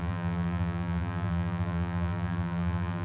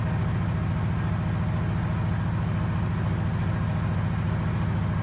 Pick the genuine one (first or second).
second